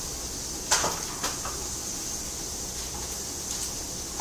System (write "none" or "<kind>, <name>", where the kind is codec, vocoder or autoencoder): none